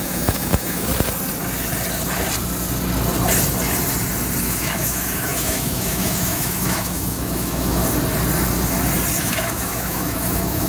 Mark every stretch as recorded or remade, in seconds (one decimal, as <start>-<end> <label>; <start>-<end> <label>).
0.0-0.9 remade; 0.9-4.4 recorded; 4.4-7.8 remade; 7.8-9.2 recorded; 9.2-10.7 remade